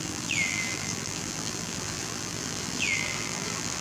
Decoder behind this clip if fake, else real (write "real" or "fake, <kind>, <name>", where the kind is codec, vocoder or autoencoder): fake, vocoder, BigVGAN v2